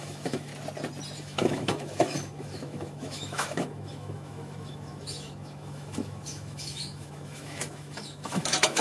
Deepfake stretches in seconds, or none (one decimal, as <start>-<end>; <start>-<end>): 0.0-0.5; 1.2-8.8